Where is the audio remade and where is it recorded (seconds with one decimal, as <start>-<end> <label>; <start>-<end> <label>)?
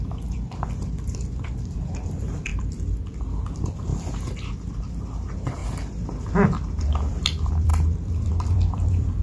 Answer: 0.0-3.9 remade; 3.9-4.7 recorded; 4.7-5.6 remade; 5.6-6.2 recorded; 6.2-9.2 remade